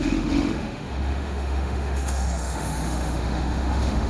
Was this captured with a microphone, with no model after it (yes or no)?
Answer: no